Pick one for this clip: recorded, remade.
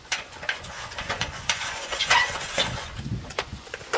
remade